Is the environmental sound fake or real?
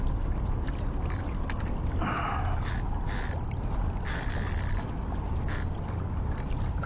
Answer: real